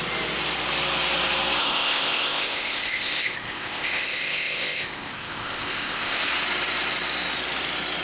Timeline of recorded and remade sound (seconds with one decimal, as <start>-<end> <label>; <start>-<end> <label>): 0.0-1.6 recorded; 1.6-6.3 remade; 6.3-8.0 recorded